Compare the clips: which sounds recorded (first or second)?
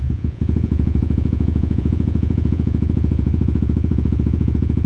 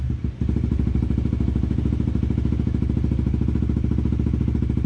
second